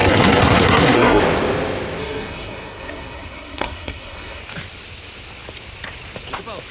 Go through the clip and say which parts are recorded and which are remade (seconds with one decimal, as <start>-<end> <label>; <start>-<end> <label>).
0.0-1.2 remade; 1.2-2.0 recorded; 2.0-4.4 remade; 4.4-6.7 recorded